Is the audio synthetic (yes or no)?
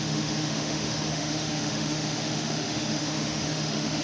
yes